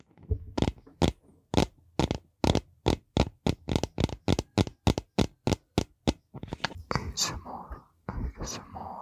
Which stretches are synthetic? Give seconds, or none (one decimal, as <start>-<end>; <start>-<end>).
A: none